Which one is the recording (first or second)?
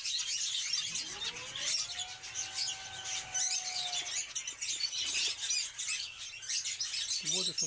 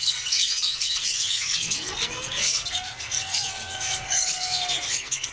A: first